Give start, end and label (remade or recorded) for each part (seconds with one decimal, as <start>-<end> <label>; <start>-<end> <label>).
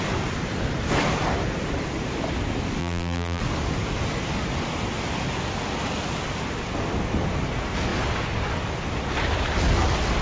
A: 0.0-2.8 recorded; 2.8-3.4 remade; 3.4-10.2 recorded